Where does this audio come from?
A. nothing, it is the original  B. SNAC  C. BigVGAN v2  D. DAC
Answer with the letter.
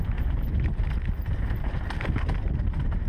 A